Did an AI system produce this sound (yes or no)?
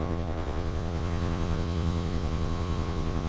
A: yes